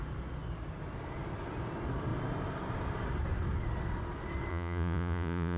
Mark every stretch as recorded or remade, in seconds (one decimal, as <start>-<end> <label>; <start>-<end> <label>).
0.0-4.5 recorded; 4.5-5.6 remade